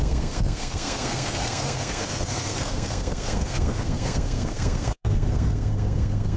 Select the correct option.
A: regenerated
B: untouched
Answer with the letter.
A